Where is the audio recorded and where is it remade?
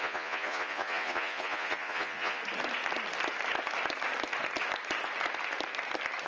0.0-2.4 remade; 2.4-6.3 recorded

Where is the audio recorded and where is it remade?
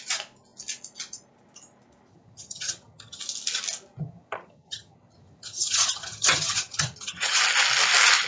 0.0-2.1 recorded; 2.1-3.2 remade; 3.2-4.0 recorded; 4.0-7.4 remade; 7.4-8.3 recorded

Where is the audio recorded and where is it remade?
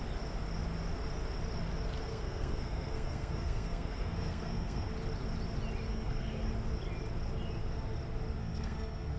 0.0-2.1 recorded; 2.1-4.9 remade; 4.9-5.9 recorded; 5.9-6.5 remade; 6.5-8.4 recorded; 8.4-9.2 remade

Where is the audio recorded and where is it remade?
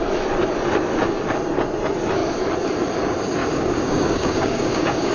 0.0-3.4 recorded; 3.4-5.1 remade